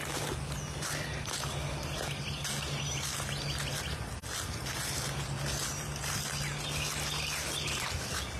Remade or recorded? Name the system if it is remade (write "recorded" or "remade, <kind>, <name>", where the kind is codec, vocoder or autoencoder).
recorded